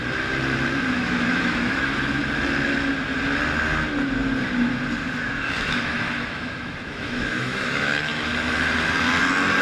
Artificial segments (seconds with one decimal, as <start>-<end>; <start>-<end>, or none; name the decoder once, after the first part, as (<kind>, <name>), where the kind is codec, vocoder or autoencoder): 0.9-2.2 (autoencoder, DAC-VAE); 5.3-8.3